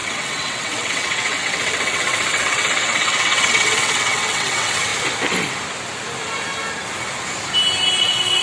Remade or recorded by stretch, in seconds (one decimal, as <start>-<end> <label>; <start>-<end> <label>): 0.0-4.9 remade; 4.9-8.0 recorded; 8.0-8.4 remade